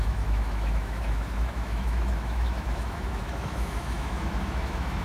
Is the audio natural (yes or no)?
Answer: no